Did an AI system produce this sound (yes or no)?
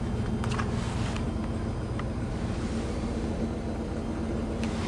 no